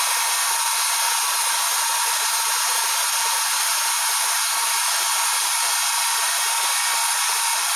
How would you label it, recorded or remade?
recorded